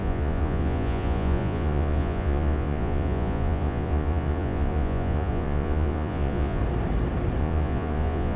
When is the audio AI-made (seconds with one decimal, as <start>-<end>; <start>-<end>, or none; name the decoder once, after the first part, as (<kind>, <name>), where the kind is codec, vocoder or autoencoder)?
0.0-6.6 (vocoder, Vocos); 7.4-8.4

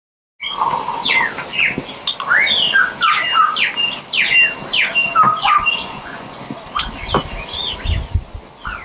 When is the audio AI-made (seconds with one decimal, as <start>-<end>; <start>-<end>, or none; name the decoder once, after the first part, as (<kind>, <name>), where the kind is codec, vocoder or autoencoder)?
5.3-6.5 (vocoder, Vocos)

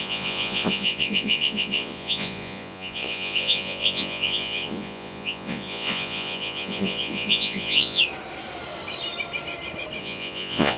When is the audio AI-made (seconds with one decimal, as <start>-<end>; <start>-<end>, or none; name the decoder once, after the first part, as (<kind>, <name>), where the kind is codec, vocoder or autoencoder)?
0.0-8.0 (vocoder, Vocos); 10.0-10.8

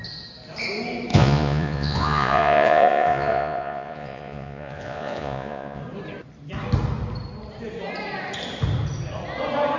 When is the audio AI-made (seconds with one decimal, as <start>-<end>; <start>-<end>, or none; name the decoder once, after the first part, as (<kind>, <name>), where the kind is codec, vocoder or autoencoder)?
1.1-5.8 (vocoder, Vocos)